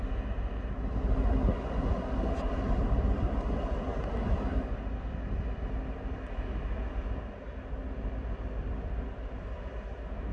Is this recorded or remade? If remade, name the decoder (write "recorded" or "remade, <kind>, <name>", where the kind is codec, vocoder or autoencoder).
recorded